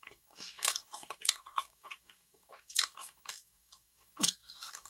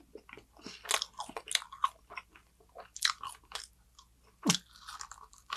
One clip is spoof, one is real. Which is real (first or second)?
second